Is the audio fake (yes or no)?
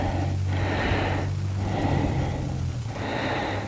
no